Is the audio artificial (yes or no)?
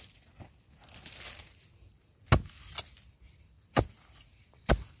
no